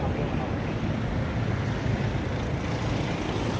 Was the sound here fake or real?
real